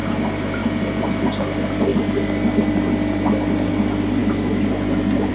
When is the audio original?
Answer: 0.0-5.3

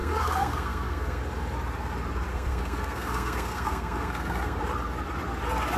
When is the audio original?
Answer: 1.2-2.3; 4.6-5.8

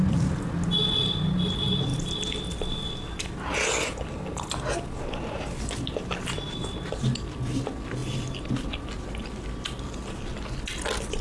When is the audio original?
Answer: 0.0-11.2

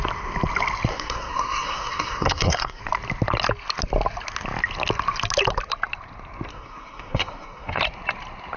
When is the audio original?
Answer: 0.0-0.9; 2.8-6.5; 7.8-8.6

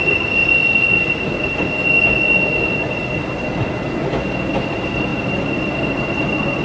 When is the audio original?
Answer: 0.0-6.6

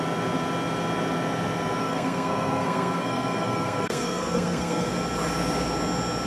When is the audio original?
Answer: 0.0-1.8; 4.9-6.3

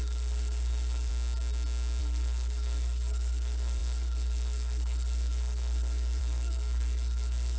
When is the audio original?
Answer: 1.1-2.0